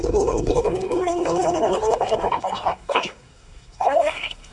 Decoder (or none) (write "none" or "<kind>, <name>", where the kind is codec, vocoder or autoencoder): codec, SNAC